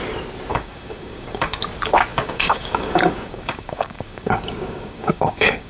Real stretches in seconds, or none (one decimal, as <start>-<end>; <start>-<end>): 0.0-0.5; 1.6-2.1